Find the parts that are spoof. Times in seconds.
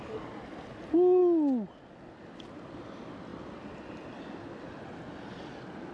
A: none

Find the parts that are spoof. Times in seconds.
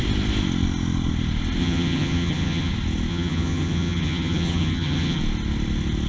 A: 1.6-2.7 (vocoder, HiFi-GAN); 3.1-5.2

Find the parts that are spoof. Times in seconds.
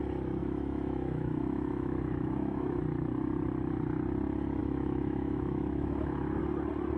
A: 0.4-2.8 (autoencoder, DAC-VAE); 4.6-6.4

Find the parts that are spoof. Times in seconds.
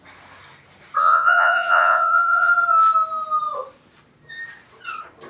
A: 1.0-2.5 (vocoder, Vocos)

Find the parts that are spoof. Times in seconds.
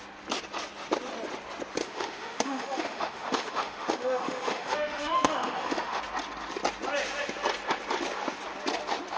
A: 1.8-6.0 (autoencoder, DAC-VAE)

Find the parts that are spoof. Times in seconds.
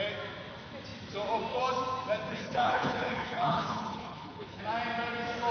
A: 2.3-4.6 (codec, HILCodec)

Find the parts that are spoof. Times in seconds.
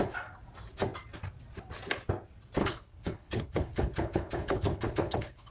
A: 2.6-5.5 (codec, HILCodec)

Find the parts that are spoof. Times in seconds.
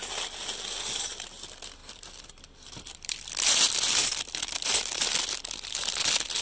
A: 1.8-3.3 (vocoder, BigVGAN v2); 4.0-6.4